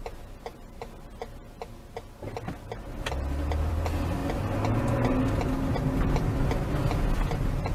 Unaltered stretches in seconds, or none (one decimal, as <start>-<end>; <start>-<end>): 0.0-7.7